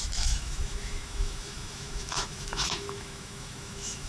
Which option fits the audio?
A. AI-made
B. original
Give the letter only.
A